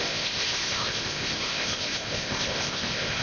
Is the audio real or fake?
fake